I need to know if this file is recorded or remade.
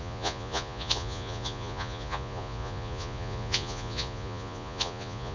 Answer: remade